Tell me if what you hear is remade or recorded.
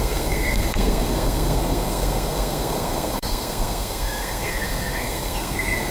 remade